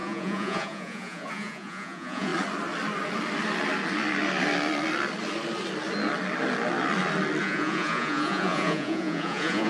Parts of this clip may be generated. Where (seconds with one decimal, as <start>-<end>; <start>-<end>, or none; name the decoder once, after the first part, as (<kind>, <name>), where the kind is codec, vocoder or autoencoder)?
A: 0.0-2.3 (vocoder, Vocos); 7.4-9.7

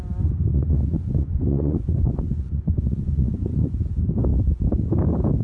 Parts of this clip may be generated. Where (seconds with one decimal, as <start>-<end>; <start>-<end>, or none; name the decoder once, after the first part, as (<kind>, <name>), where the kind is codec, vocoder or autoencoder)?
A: 0.5-3.7 (vocoder, Vocos)

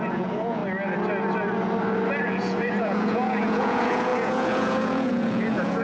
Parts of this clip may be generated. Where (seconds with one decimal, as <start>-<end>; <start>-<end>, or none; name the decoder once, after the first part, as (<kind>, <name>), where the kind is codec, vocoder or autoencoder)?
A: 0.0-0.6 (vocoder, Vocos); 2.2-5.8

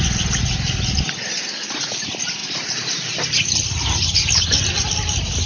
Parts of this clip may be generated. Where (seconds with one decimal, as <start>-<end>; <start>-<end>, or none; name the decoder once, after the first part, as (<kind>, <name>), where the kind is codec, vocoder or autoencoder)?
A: none